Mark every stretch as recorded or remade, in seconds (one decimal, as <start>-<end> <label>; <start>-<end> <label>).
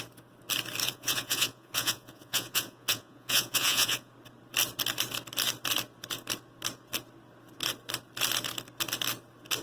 0.0-0.8 recorded; 0.8-4.1 remade; 4.1-9.6 recorded